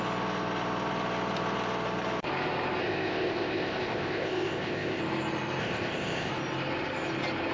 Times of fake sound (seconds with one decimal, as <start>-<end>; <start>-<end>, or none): 2.8-5.0; 5.6-6.3